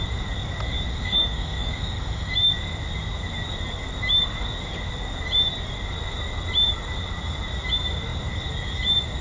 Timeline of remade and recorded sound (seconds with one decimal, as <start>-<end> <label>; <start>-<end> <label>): 0.0-0.9 recorded; 0.9-2.3 remade; 2.3-9.2 recorded